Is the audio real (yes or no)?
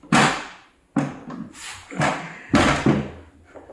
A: yes